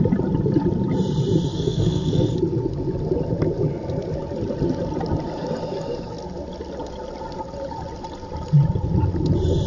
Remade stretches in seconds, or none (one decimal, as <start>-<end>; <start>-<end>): 1.5-2.3